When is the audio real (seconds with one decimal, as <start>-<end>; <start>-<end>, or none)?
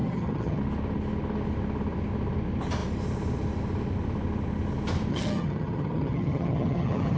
0.6-5.1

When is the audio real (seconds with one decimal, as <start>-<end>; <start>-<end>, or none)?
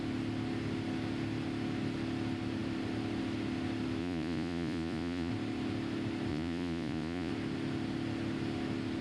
0.0-4.0; 5.3-6.3; 7.3-9.0